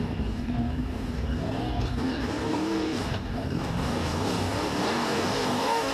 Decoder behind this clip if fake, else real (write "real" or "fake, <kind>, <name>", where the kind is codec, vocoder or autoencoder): fake, codec, DAC